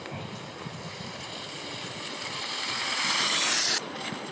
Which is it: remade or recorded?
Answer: recorded